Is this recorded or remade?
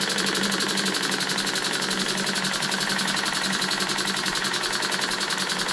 recorded